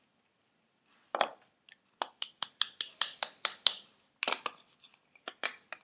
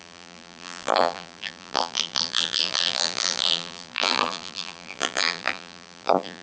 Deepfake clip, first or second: second